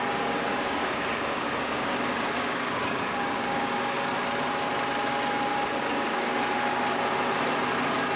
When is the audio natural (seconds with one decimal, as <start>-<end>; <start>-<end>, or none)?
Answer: 0.0-0.5; 4.1-5.5; 6.3-8.2